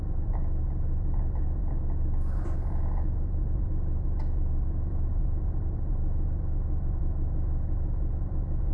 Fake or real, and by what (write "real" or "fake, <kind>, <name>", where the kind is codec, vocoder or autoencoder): fake, vocoder, BigVGAN v2